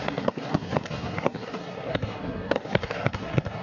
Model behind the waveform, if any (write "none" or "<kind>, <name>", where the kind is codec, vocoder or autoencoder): codec, SNAC